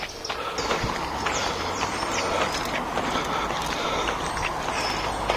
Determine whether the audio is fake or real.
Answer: real